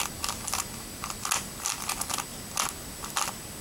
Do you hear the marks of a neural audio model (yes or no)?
no